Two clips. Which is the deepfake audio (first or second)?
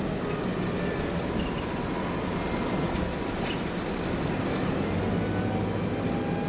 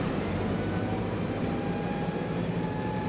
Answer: second